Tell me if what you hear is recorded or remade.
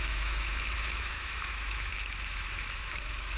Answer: remade